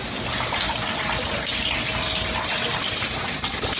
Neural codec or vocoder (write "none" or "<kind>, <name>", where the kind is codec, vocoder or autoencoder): none